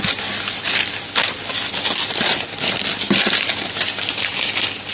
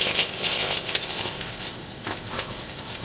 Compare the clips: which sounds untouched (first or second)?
first